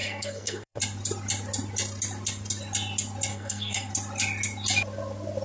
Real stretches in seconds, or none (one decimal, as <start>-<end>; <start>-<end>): 0.8-3.3; 3.9-5.4